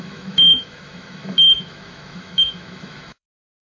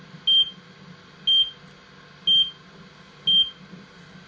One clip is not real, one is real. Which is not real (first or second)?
first